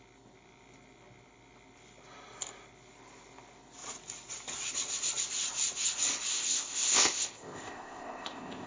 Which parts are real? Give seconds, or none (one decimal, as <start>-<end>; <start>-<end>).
0.0-6.3